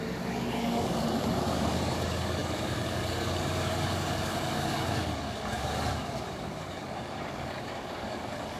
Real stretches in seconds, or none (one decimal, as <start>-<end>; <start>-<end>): none